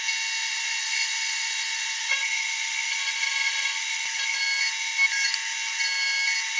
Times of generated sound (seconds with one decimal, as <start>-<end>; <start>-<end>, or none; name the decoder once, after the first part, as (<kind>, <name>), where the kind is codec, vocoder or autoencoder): 0.4-4.4 (vocoder, Vocos)